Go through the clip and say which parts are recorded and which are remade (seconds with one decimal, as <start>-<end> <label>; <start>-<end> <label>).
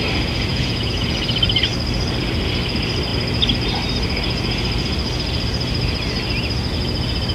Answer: 0.0-0.5 recorded; 0.5-1.1 remade; 1.1-7.3 recorded